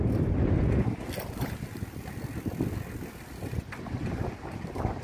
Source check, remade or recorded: recorded